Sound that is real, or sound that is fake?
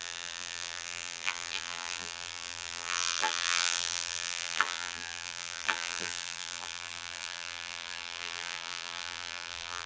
fake